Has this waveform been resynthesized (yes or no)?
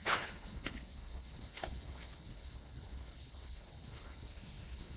yes